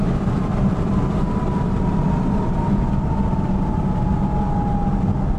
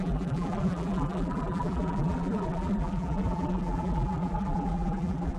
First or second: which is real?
first